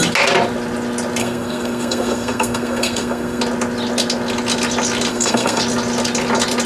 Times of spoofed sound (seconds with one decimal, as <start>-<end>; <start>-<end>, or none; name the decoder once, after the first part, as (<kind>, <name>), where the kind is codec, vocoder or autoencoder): 1.2-3.4 (codec, SNAC); 5.1-5.6